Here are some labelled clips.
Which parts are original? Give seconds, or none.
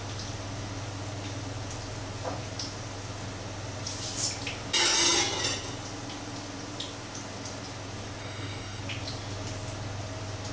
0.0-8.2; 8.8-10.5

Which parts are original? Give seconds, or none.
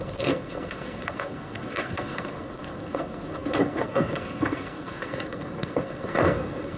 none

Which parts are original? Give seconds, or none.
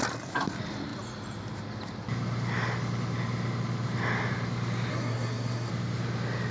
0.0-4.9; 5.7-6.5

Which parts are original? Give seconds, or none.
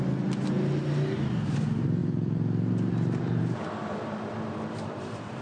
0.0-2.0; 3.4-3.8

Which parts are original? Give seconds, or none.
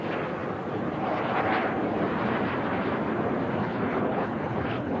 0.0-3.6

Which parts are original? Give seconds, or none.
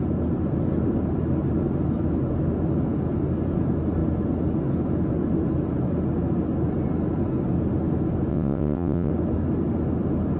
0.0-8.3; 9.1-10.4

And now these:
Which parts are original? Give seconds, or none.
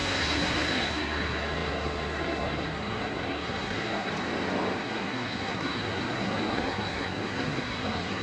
4.1-4.8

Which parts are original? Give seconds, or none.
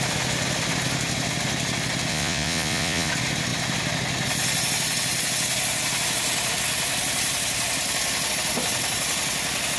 0.0-2.1; 3.1-9.8